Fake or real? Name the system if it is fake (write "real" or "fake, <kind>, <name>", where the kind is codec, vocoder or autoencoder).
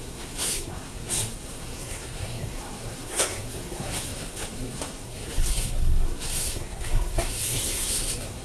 fake, codec, SNAC